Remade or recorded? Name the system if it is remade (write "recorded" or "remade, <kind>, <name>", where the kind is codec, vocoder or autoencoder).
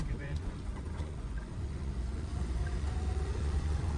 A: remade, vocoder, Vocos